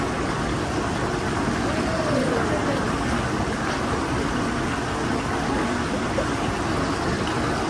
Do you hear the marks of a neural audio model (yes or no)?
no